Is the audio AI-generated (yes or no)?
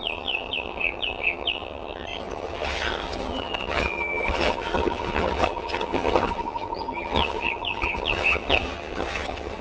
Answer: yes